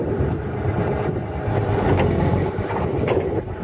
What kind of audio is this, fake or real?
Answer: real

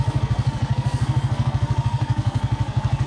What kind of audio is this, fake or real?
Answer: fake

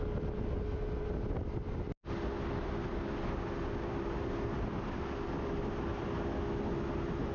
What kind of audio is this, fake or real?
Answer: real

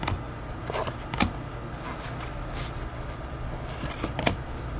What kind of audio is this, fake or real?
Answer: real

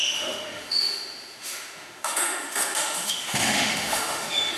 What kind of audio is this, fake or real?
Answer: fake